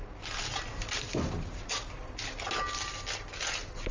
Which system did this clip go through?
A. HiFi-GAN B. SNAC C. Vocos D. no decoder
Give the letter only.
D